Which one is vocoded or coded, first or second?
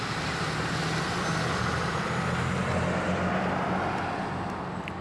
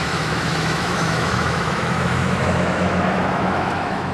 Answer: second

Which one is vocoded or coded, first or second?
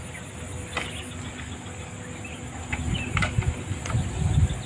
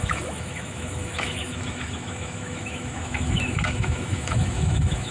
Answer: second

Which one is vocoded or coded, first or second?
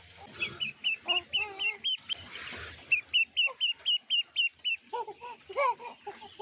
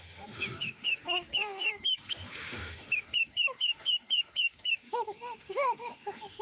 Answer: second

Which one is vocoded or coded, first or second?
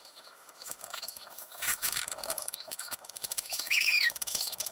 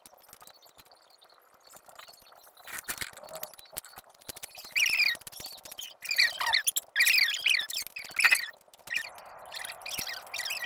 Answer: first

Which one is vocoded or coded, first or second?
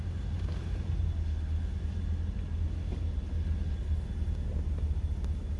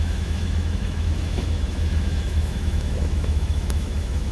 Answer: second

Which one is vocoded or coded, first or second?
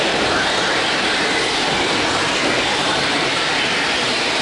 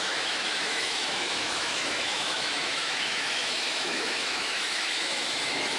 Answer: second